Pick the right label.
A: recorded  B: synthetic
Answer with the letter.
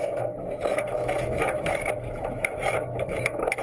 B